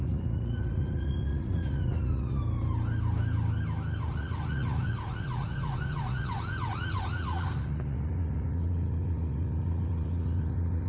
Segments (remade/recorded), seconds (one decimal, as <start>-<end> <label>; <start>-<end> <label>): 0.0-2.4 remade; 2.4-4.1 recorded; 4.1-10.9 remade